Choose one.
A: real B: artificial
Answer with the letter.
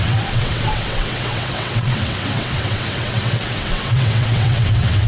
B